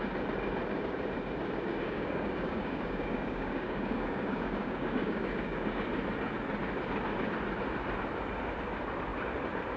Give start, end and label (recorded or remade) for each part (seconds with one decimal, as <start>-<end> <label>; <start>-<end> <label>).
0.0-1.7 recorded; 1.7-5.9 remade; 5.9-9.8 recorded